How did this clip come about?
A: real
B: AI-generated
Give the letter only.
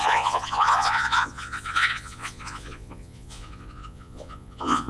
B